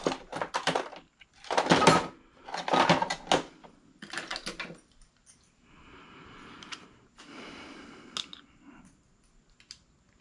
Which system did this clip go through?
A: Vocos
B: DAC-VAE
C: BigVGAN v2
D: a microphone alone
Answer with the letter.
D